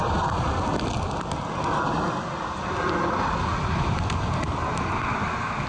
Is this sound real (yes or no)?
yes